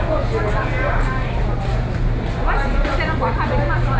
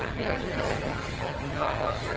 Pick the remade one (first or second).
second